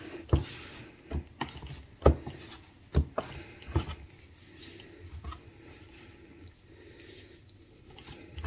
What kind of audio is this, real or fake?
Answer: real